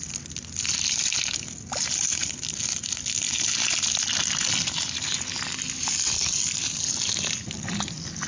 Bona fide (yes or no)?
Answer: yes